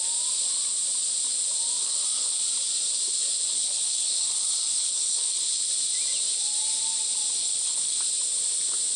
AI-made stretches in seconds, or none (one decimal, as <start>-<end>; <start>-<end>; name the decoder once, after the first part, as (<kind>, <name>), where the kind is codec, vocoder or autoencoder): 1.8-2.4 (codec, HILCodec); 3.3-5.7; 7.4-8.0